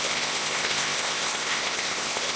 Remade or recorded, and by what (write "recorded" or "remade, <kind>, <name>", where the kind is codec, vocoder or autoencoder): remade, codec, ZipCodec